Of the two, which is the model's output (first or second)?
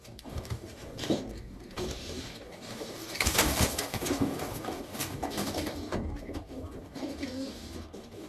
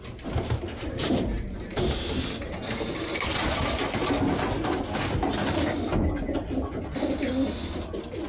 first